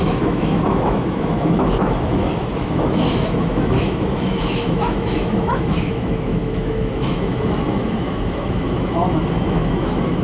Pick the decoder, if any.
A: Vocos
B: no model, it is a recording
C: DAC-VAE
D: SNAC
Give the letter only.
C